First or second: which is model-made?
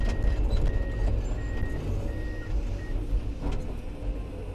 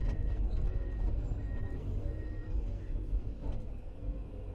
second